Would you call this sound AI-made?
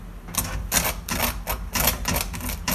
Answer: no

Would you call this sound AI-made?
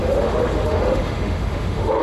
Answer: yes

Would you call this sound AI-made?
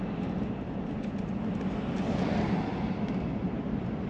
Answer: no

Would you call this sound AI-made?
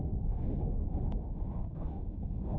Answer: yes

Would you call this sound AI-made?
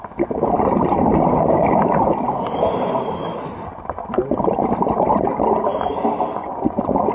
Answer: no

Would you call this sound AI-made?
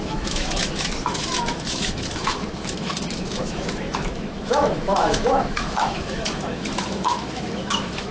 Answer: yes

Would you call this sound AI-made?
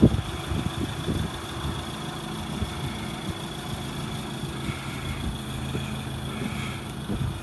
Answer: no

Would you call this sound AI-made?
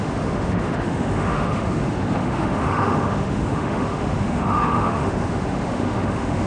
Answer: yes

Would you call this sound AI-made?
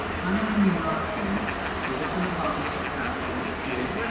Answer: no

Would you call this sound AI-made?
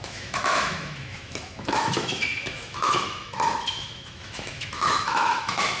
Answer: yes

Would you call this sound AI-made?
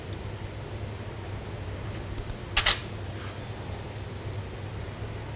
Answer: no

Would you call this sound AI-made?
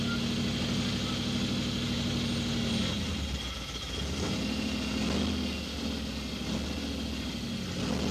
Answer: no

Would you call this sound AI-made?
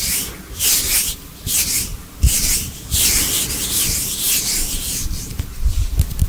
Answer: no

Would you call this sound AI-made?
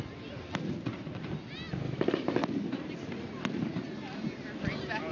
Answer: no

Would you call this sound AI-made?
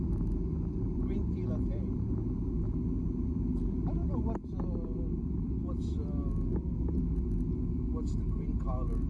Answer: no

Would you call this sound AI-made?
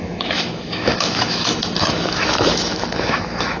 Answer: yes